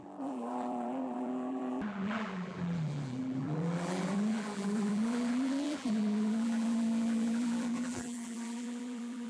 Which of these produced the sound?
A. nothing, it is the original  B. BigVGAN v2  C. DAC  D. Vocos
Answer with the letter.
B